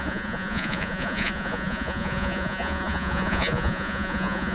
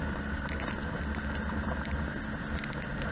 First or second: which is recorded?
second